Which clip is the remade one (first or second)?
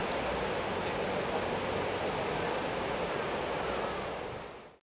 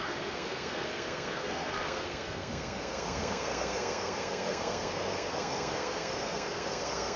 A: second